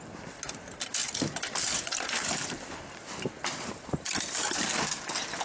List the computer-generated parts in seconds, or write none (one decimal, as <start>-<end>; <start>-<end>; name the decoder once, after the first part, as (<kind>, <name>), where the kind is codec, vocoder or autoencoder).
none